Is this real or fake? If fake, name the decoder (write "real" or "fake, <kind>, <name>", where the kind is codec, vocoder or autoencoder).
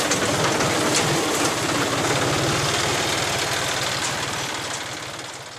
real